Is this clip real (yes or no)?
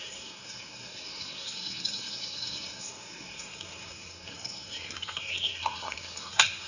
no